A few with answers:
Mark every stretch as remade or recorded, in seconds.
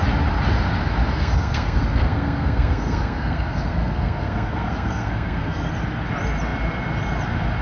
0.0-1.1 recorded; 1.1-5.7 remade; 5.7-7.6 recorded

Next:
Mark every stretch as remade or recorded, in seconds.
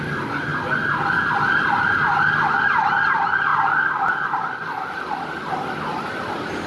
0.0-6.7 recorded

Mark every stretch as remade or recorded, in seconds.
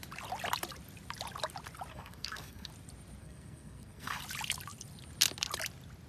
0.0-1.9 recorded; 1.9-2.7 remade; 2.7-3.2 recorded; 3.2-4.2 remade; 4.2-6.1 recorded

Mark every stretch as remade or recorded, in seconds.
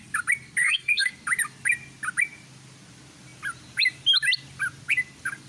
0.0-0.6 recorded; 0.6-1.1 remade; 1.1-5.5 recorded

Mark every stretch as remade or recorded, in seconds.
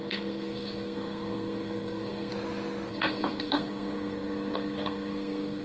0.0-2.3 remade; 2.3-2.9 recorded; 2.9-5.6 remade